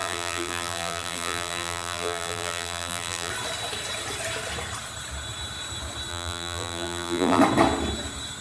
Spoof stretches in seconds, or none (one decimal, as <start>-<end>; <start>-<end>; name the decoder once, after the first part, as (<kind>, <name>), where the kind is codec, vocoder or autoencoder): 0.0-3.3 (vocoder, BigVGAN v2); 6.1-7.4